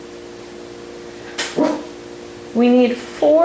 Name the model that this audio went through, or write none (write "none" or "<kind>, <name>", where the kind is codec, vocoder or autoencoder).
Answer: none